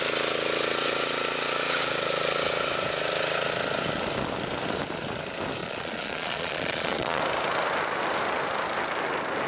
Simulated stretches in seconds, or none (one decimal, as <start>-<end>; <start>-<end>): 5.6-7.2